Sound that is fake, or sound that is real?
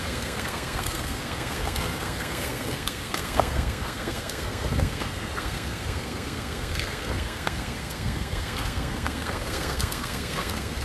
fake